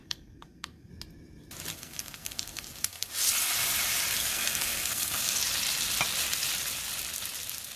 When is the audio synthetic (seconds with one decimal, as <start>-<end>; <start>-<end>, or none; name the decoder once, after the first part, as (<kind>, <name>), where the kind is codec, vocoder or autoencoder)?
0.0-0.9 (codec, SNAC); 1.7-3.1; 4.2-5.4